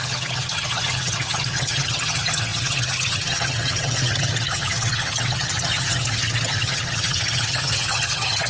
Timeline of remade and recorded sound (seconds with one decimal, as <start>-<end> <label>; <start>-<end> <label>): 0.0-8.5 remade